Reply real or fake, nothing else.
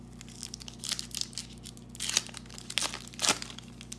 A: real